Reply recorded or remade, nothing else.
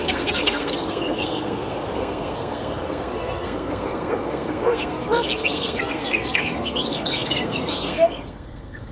remade